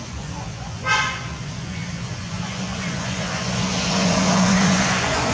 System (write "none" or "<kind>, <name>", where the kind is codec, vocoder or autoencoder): vocoder, Vocos